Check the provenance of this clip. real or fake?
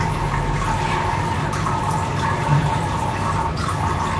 real